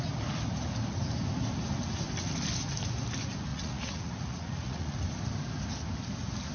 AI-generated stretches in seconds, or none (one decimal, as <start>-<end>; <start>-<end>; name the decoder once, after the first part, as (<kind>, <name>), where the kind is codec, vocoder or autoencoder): 3.5-4.9 (vocoder, Vocos)